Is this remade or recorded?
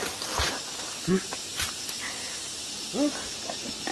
recorded